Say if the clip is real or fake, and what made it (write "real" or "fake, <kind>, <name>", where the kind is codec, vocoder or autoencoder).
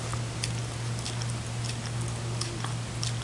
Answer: real